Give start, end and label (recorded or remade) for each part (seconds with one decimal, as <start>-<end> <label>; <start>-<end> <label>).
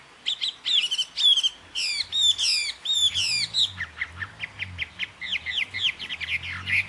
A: 0.0-6.9 recorded